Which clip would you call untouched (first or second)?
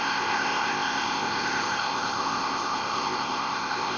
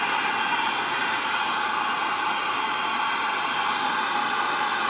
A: second